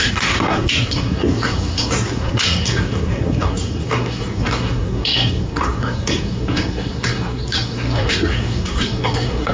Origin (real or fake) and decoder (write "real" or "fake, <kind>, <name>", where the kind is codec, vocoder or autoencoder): fake, codec, SNAC